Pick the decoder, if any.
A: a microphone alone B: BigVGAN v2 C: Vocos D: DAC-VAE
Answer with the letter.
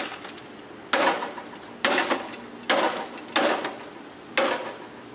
A